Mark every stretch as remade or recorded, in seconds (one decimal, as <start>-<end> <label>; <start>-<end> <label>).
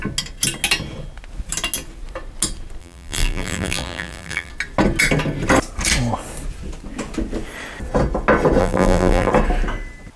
0.0-2.8 recorded; 2.8-4.5 remade; 4.5-8.6 recorded; 8.6-9.3 remade; 9.3-10.2 recorded